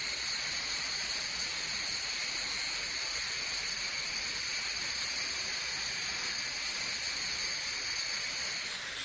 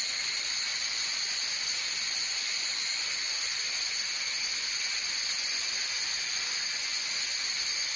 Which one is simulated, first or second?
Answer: second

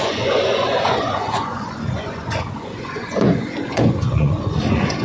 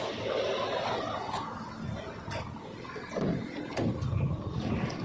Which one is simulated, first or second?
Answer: first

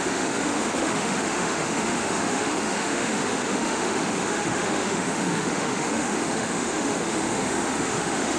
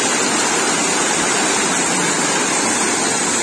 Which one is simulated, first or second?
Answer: first